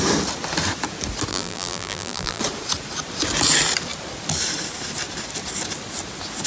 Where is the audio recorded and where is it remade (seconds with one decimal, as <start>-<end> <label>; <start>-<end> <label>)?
0.0-1.3 recorded; 1.3-2.4 remade; 2.4-6.5 recorded